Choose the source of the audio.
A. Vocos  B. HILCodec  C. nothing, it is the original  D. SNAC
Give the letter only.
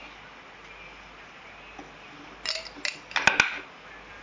C